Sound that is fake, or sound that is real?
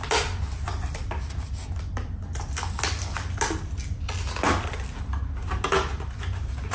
real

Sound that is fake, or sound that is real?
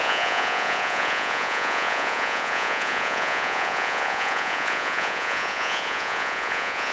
fake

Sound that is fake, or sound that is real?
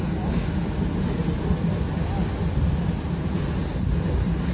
real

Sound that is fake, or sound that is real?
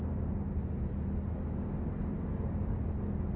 real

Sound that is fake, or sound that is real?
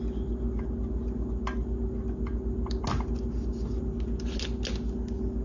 real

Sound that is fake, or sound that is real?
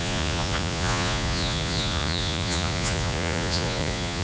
fake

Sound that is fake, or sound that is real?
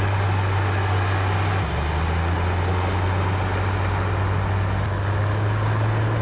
real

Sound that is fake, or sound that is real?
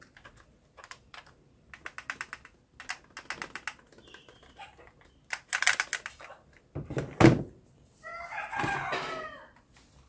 real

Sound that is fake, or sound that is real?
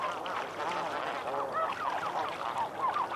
real